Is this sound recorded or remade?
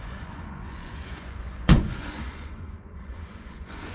remade